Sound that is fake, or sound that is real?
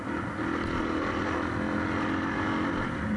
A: real